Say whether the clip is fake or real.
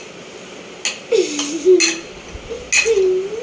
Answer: real